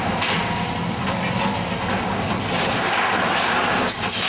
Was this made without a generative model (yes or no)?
yes